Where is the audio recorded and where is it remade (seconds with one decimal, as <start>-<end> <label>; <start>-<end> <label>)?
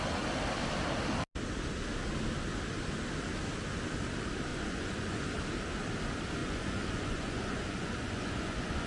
0.0-4.5 recorded; 4.5-5.2 remade; 5.2-6.4 recorded; 6.4-8.9 remade